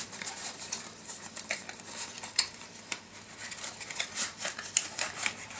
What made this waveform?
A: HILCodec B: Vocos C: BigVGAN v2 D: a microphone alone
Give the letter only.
C